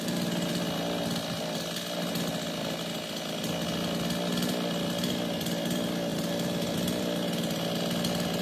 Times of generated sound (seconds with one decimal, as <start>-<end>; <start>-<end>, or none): none